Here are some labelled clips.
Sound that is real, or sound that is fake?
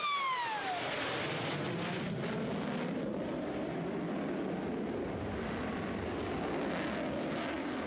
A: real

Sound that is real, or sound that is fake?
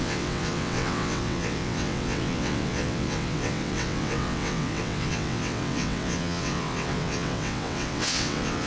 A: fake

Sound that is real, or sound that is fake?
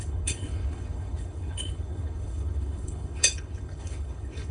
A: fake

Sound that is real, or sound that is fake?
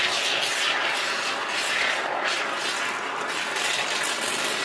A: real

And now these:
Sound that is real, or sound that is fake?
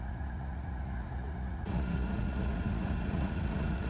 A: fake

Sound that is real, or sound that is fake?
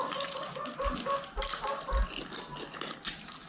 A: real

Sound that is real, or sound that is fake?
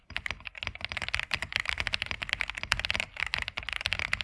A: real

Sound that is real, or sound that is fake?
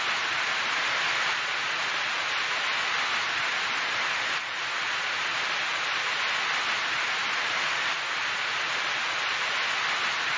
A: real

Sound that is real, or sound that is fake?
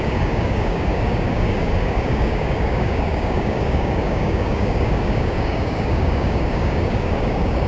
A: fake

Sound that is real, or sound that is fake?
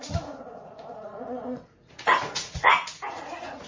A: fake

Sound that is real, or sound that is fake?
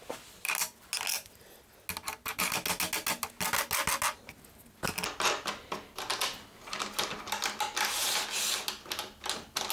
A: real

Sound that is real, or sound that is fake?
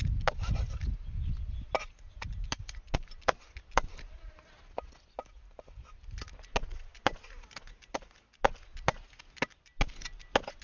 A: real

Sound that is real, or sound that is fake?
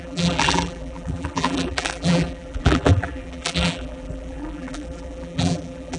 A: fake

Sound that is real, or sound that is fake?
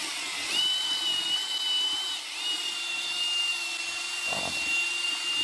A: real